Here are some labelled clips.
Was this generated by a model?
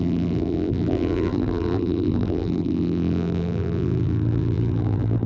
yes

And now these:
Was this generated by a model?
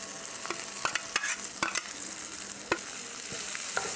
no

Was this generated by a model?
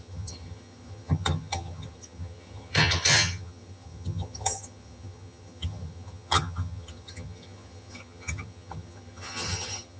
yes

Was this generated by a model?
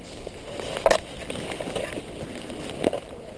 no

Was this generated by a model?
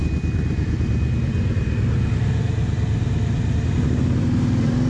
no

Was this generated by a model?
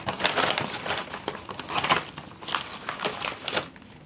no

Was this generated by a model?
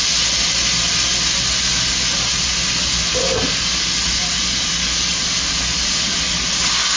no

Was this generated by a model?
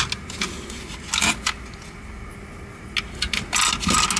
no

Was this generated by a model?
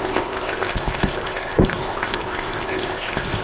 yes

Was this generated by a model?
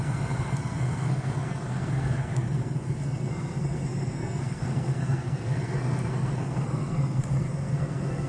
yes